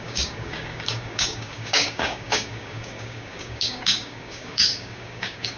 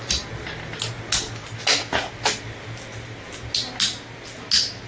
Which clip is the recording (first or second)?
second